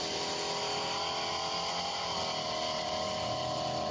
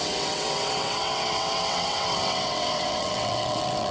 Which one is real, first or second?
first